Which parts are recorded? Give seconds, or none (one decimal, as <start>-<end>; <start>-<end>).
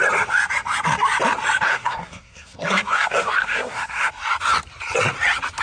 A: 0.0-1.7; 4.1-5.6